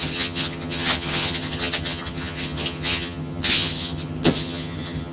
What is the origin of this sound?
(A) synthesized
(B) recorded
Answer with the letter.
A